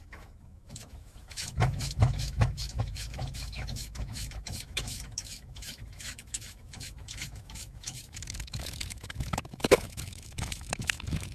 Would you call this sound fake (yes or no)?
yes